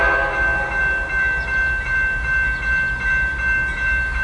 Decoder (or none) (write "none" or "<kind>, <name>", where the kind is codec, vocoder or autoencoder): none